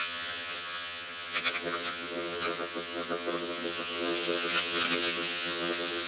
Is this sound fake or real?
fake